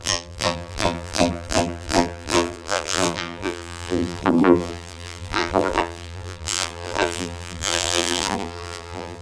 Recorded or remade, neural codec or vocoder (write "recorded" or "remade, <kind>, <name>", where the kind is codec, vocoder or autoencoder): remade, vocoder, BigVGAN v2